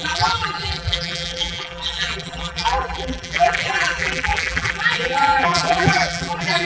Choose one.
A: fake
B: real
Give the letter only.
A